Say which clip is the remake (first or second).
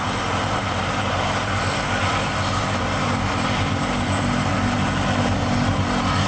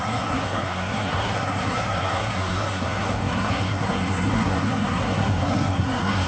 second